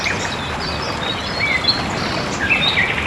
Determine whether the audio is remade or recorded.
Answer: recorded